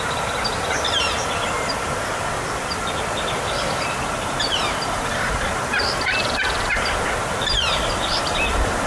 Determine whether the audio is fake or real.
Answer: real